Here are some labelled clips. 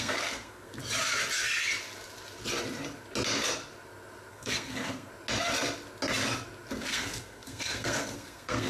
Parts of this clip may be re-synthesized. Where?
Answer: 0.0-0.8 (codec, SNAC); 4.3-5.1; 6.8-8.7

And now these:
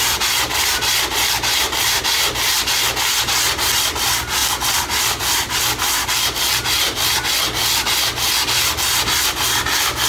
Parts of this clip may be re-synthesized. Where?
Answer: 4.4-7.0 (vocoder, BigVGAN v2)

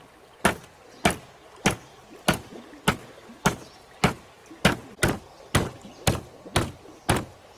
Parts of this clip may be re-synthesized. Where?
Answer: none

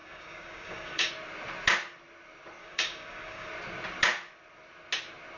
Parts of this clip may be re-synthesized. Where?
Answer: 0.0-1.1 (codec, DAC); 2.6-3.5

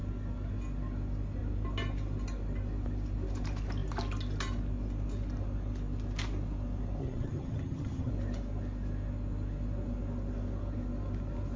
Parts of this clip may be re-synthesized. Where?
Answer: 7.0-8.1 (vocoder, HiFi-GAN)

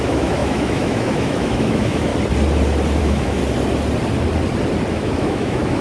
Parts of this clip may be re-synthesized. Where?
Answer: 0.0-2.1 (autoencoder, DAC-VAE); 3.0-3.4; 4.9-5.8

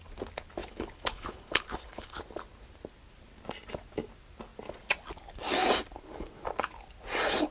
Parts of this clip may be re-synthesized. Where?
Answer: 0.6-2.2 (codec, HILCodec)